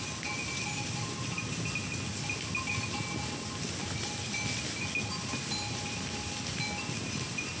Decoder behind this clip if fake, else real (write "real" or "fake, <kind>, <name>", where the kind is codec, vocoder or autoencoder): real